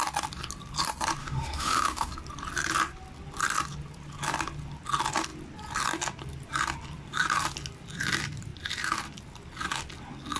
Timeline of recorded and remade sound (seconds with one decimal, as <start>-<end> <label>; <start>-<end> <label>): 0.0-1.2 recorded; 1.2-2.1 remade; 2.1-10.4 recorded